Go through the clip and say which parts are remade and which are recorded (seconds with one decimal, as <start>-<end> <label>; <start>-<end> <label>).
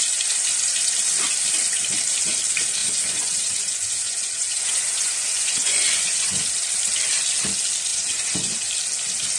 0.0-2.8 recorded; 2.8-6.4 remade; 6.4-7.9 recorded; 7.9-8.7 remade; 8.7-9.4 recorded